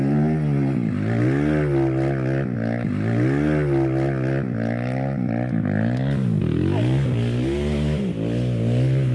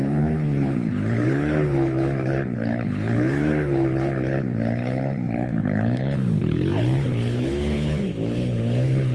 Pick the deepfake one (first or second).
second